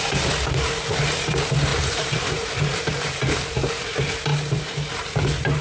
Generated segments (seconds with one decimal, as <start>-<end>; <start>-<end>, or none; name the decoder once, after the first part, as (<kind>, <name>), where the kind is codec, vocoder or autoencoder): 1.7-3.7 (vocoder, BigVGAN v2)